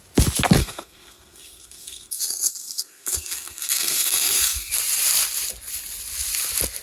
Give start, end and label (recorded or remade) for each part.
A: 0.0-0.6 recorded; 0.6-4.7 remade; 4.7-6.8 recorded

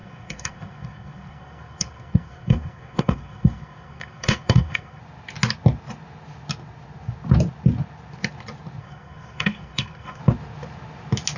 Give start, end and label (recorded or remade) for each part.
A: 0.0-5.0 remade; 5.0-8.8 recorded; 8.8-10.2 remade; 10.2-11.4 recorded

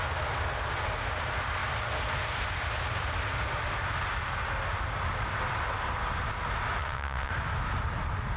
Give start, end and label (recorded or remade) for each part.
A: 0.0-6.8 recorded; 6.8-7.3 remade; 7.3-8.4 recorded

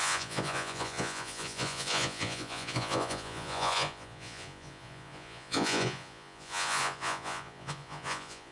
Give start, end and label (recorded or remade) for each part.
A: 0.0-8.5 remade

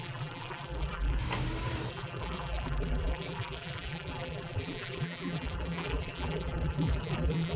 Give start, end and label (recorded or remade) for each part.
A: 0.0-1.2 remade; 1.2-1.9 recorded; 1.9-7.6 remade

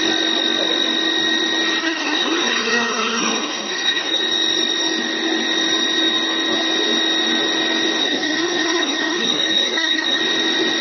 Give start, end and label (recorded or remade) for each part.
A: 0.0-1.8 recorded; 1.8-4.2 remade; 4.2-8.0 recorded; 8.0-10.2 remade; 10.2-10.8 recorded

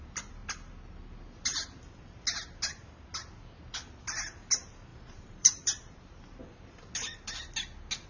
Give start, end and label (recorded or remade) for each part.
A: 0.0-4.9 recorded; 4.9-6.4 remade; 6.4-8.1 recorded